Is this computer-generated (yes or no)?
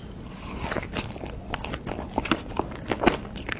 no